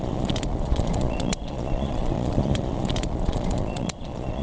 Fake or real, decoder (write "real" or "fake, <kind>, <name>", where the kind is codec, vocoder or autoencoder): fake, vocoder, Vocos